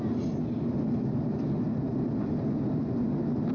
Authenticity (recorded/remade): recorded